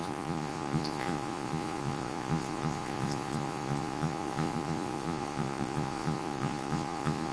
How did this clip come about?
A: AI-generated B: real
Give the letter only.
A